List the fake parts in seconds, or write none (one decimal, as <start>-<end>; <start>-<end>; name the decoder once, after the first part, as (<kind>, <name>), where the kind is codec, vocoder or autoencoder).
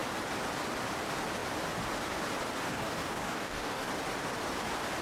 2.7-3.9 (codec, DAC)